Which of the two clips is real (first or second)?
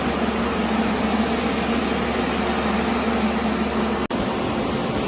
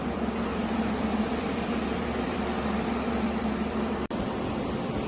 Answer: first